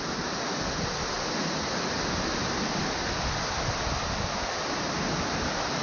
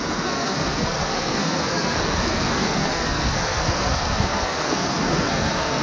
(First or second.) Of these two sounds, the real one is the first